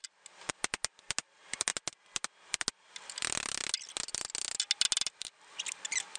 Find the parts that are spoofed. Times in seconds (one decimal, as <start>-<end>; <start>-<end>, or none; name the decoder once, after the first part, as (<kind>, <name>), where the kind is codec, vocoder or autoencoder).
none